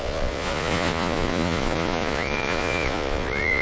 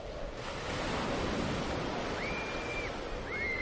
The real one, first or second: second